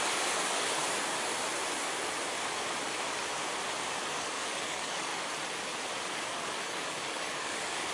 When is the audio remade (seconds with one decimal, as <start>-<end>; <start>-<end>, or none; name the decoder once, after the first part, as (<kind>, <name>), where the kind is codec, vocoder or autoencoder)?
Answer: 0.0-0.8 (codec, DAC); 4.2-5.1; 6.1-7.9